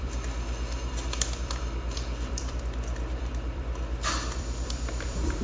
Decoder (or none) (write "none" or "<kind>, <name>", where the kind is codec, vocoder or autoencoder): vocoder, BigVGAN v2